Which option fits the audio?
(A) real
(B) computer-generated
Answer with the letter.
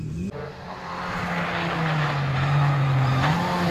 A